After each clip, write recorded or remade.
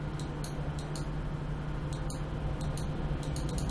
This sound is recorded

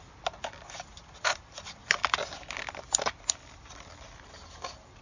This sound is recorded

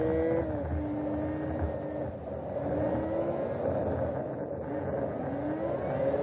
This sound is recorded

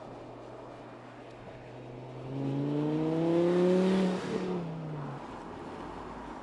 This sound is recorded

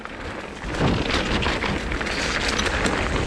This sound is recorded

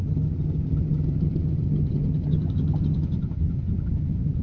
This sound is remade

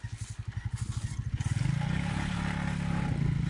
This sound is recorded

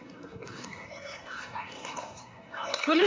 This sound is remade